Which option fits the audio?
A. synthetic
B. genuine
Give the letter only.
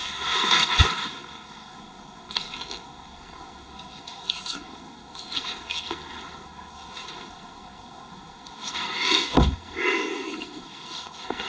A